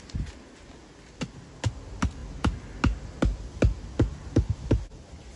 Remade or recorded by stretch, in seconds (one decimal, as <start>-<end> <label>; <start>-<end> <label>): 0.0-5.4 recorded